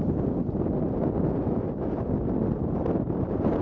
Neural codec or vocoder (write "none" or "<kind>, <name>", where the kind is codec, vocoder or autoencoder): none